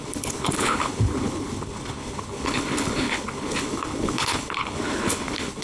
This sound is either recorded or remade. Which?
remade